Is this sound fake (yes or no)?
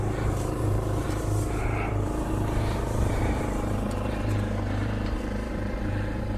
yes